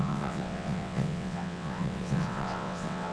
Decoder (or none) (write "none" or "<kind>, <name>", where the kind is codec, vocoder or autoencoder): vocoder, WaveNeXt